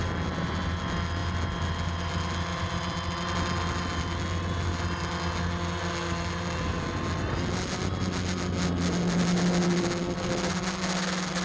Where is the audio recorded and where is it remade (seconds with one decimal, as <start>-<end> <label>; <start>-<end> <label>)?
0.0-11.4 recorded